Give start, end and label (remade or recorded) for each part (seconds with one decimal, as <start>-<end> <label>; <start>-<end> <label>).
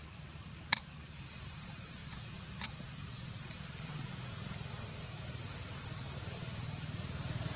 0.0-2.0 remade; 2.0-3.3 recorded; 3.3-3.9 remade; 3.9-4.7 recorded; 4.7-7.6 remade